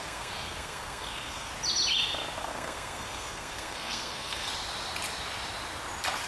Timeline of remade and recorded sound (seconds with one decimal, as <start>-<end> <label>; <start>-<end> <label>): 0.0-1.5 remade; 1.5-2.4 recorded; 2.4-4.5 remade; 4.5-6.3 recorded